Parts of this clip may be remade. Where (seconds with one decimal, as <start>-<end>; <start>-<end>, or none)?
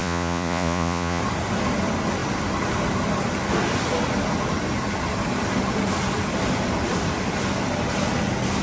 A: 0.0-1.2